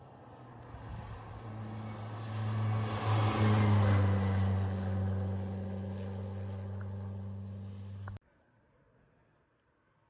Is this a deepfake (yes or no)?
no